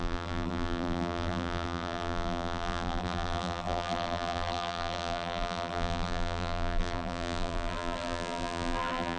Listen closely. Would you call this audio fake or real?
fake